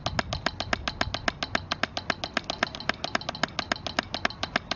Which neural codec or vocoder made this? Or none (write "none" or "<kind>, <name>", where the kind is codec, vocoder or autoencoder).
none